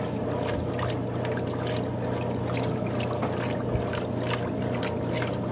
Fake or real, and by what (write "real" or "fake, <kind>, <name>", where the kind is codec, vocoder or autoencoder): real